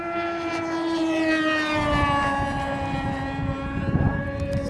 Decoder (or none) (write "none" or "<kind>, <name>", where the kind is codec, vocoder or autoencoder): none